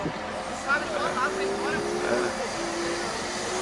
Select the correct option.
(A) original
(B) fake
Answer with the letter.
A